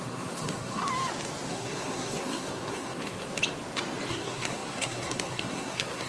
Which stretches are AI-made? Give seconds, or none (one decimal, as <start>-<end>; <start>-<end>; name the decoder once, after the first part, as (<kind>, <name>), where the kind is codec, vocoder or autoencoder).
0.0-0.8 (codec, SNAC); 1.5-3.4; 4.1-6.1